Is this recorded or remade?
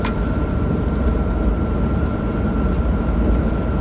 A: remade